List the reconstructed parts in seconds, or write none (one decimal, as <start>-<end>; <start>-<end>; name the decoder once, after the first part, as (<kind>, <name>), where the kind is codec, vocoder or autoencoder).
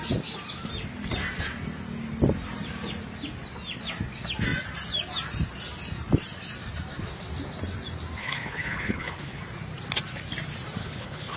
8.2-9.4 (codec, HILCodec); 10.8-11.4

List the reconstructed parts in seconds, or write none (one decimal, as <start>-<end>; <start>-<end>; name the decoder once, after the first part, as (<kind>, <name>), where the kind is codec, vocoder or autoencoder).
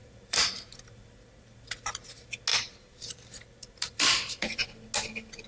0.0-0.8 (vocoder, BigVGAN v2); 2.5-4.6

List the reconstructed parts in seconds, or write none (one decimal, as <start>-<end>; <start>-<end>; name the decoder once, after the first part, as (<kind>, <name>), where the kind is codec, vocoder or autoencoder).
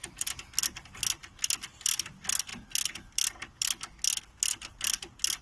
none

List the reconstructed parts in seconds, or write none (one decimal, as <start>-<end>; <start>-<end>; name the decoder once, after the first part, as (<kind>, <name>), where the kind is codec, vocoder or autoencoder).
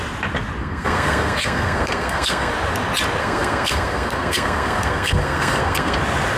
0.6-2.5 (codec, SNAC); 3.2-6.0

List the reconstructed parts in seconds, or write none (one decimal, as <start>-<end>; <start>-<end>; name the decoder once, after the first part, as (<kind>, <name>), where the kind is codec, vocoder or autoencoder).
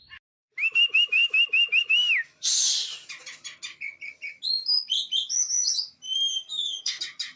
6.3-7.0 (codec, SNAC)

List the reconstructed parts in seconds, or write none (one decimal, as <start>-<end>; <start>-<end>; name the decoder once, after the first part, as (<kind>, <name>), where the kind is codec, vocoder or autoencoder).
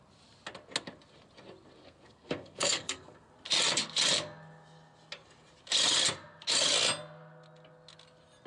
1.8-3.3 (codec, SNAC)